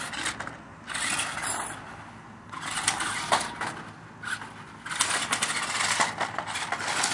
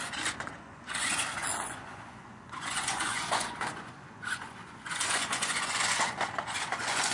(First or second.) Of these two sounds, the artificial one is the second